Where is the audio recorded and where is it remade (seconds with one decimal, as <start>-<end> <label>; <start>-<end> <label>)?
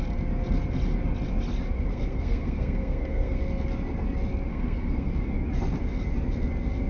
0.0-1.9 recorded; 1.9-3.4 remade; 3.4-4.5 recorded; 4.5-5.1 remade; 5.1-6.9 recorded